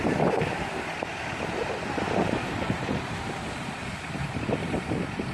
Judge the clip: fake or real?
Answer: fake